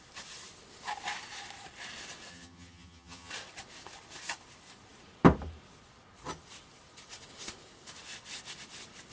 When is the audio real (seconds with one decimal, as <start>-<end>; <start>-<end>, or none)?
0.0-2.3; 3.3-9.1